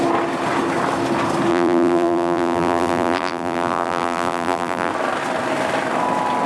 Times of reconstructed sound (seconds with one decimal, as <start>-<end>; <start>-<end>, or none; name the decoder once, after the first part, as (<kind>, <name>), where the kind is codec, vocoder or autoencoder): 1.5-4.9 (vocoder, BigVGAN v2)